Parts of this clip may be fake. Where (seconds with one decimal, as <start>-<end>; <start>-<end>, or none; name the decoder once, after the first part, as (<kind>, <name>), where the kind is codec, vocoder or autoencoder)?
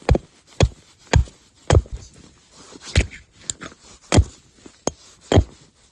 none